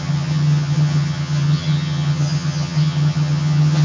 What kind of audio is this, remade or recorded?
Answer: remade